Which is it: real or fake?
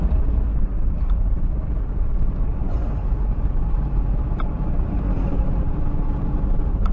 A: fake